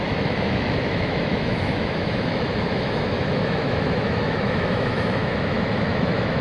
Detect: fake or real fake